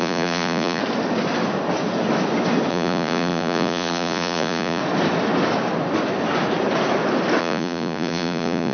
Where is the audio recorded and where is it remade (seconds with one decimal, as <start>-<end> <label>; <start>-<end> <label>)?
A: 0.0-0.8 remade; 0.8-2.7 recorded; 2.7-4.8 remade; 4.8-7.4 recorded; 7.4-8.7 remade